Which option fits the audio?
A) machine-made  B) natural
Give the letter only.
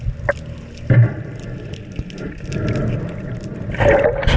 B